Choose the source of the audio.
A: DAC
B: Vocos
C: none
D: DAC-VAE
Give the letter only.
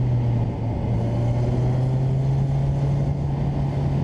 C